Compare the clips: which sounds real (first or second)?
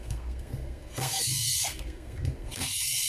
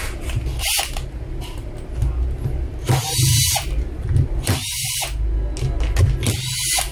second